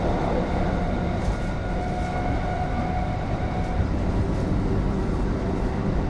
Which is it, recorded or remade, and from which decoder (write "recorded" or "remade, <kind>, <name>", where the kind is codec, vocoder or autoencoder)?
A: recorded